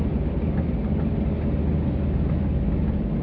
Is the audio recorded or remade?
recorded